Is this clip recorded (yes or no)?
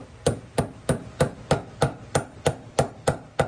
yes